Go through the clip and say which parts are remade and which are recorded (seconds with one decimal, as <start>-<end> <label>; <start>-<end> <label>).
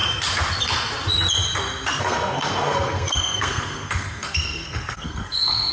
0.0-2.0 recorded; 2.0-5.7 remade